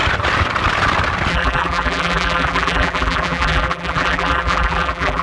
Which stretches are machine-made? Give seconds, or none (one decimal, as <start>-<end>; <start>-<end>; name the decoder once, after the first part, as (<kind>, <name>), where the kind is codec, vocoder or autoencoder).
1.3-5.2 (vocoder, BigVGAN v2)